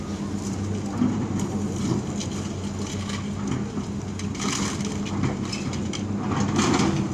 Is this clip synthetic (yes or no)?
no